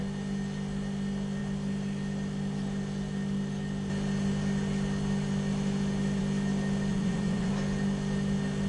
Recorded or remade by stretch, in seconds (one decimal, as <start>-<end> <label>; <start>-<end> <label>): 0.0-6.9 recorded; 6.9-7.5 remade; 7.5-8.7 recorded